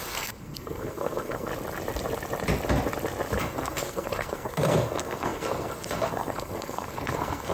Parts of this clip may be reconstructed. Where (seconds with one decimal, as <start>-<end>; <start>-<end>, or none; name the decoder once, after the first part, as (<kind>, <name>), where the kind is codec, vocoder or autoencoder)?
0.0-1.5 (codec, SNAC); 3.4-7.5